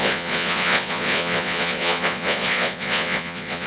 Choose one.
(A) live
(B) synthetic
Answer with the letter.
B